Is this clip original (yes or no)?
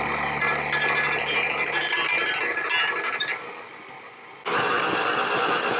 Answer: yes